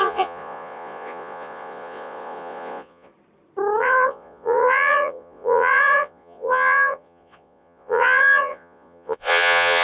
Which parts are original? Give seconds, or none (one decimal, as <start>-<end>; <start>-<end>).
3.1-3.8

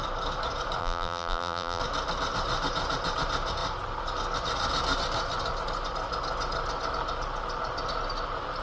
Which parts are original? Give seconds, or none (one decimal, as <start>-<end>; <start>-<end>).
0.0-0.8; 1.8-8.6

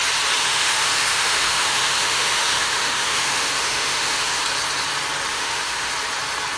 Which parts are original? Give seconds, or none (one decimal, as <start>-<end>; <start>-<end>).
0.0-0.4; 4.4-5.3; 5.9-6.6

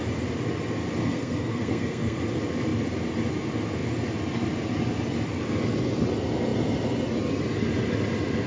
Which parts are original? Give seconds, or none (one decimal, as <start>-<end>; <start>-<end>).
0.0-1.0; 2.2-8.5